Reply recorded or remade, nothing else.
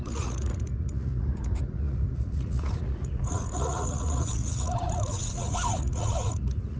remade